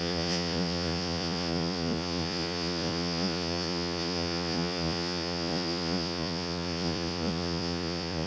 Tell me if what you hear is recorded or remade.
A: remade